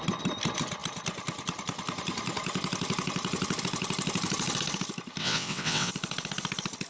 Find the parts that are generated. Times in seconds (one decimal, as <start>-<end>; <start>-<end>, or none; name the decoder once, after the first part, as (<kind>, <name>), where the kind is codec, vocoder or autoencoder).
5.2-5.9 (vocoder, WaveNeXt)